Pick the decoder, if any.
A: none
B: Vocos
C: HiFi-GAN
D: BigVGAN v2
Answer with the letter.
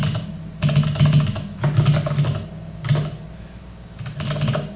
A